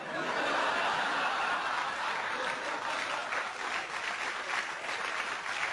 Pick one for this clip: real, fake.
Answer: real